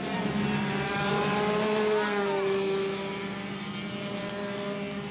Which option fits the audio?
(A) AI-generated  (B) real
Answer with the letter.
B